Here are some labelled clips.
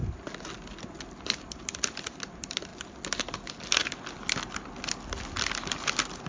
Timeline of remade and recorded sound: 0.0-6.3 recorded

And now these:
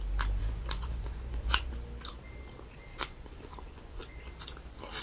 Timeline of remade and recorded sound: 0.0-0.4 recorded; 0.4-1.7 remade; 1.7-2.9 recorded; 2.9-4.3 remade; 4.3-5.0 recorded

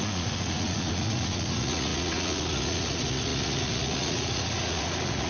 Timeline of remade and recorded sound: 0.0-5.3 remade

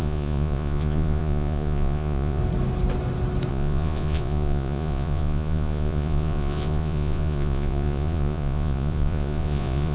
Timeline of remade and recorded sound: 0.0-2.4 remade; 2.4-3.5 recorded; 3.5-9.9 remade

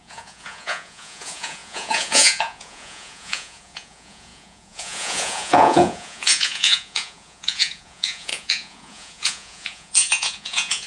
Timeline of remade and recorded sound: 0.0-10.9 remade

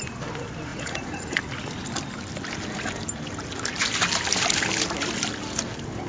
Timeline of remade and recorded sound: 0.0-0.7 recorded; 0.7-1.4 remade; 1.4-6.1 recorded